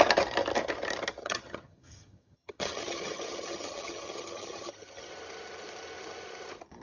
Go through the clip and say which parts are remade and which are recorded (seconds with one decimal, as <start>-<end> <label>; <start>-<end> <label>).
0.0-1.2 recorded; 1.2-5.1 remade; 5.1-6.8 recorded